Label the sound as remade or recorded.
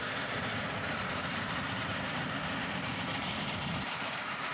remade